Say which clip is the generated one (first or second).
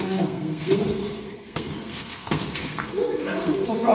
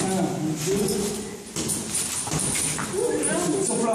first